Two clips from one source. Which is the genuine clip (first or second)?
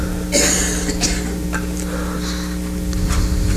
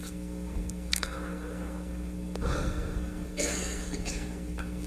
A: first